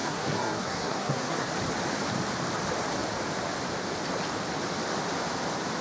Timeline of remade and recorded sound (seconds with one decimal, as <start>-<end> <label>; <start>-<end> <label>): 0.0-1.5 remade; 1.5-5.8 recorded